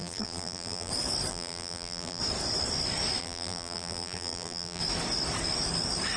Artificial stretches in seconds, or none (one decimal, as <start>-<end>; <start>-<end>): 0.0-0.9; 1.3-2.2; 3.2-4.8

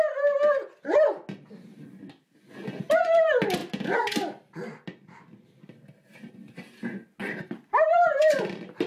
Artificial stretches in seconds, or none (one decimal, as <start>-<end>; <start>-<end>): 3.6-6.3; 7.2-8.9

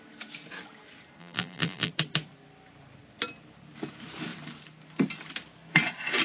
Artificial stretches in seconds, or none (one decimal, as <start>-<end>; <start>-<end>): 1.2-1.9

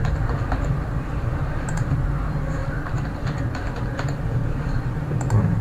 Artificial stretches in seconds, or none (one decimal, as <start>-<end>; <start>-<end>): 0.0-5.6

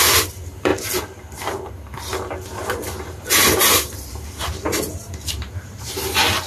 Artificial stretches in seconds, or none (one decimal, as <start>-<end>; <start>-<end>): 0.0-0.7; 3.0-6.5

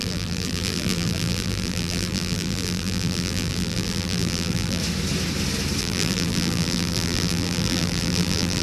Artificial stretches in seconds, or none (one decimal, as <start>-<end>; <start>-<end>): 0.0-4.8; 5.8-8.6